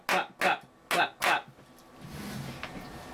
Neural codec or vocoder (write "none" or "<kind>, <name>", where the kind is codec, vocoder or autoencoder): none